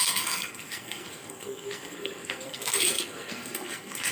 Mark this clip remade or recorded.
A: remade